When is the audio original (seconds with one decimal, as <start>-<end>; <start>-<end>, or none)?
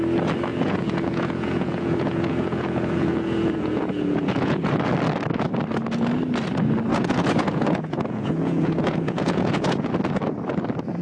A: 0.0-0.5; 4.9-6.9; 9.9-11.0